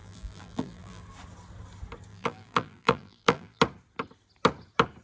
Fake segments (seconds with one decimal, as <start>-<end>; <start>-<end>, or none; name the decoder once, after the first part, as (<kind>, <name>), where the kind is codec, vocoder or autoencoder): 0.0-1.0 (vocoder, BigVGAN v2); 2.1-3.6